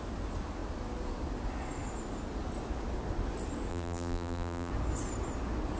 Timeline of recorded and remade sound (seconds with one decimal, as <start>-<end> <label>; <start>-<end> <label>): 0.0-3.7 recorded; 3.7-4.7 remade; 4.7-5.8 recorded